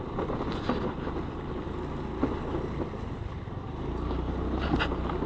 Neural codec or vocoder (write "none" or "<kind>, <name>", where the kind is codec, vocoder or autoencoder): none